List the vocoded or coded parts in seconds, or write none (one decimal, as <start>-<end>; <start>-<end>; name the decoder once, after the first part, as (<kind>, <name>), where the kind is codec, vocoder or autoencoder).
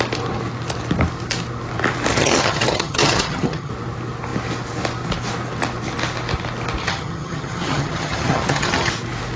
2.1-3.7 (vocoder, HiFi-GAN); 6.8-8.9